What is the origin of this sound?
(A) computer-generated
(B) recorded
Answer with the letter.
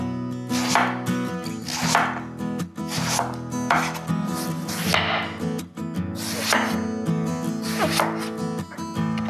B